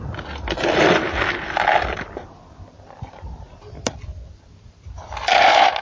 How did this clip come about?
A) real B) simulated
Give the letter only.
A